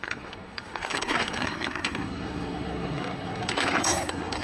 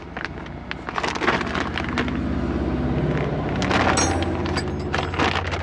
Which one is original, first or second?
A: second